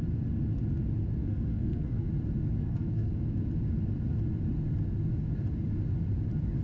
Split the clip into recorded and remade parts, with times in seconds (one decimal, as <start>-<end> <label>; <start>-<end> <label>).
0.0-1.2 recorded; 1.2-2.1 remade; 2.1-2.6 recorded; 2.6-3.1 remade; 3.1-6.6 recorded